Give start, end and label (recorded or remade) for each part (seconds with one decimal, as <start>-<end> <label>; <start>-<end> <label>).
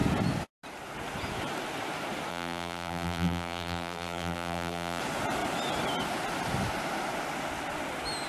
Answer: 0.0-2.3 recorded; 2.3-5.0 remade; 5.0-8.3 recorded